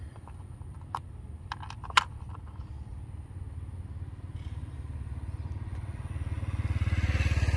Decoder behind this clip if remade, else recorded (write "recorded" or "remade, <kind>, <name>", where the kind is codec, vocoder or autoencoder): recorded